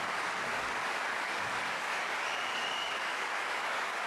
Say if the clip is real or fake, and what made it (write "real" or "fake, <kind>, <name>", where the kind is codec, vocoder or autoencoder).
fake, codec, DAC